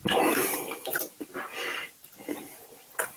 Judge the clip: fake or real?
real